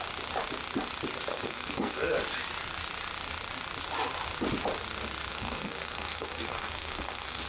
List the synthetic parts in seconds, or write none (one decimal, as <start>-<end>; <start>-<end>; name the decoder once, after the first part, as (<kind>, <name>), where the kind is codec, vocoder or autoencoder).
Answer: 1.3-2.1 (codec, SNAC); 5.3-7.5